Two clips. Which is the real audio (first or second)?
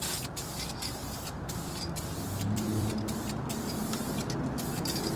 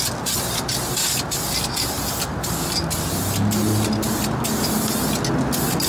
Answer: second